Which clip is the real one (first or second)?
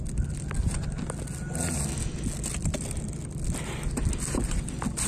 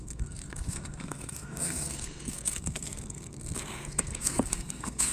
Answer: first